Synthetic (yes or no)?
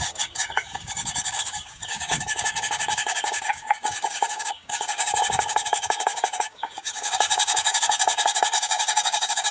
yes